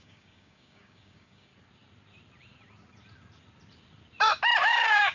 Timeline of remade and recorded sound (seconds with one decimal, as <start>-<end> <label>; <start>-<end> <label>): 0.0-1.5 remade; 1.5-4.6 recorded; 4.6-5.1 remade

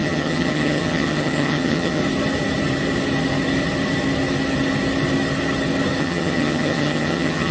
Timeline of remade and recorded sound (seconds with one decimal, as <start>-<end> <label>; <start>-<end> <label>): 0.0-2.0 remade; 2.0-6.0 recorded; 6.0-7.5 remade

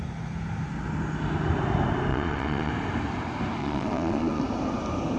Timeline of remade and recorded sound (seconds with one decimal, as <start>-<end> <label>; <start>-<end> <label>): 0.0-2.1 recorded; 2.1-2.7 remade; 2.7-3.6 recorded; 3.6-4.4 remade; 4.4-5.2 recorded

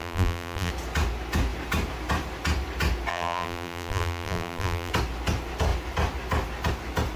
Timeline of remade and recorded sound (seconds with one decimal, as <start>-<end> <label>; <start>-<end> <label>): 0.0-0.7 remade; 0.7-3.1 recorded; 3.1-4.9 remade; 4.9-7.2 recorded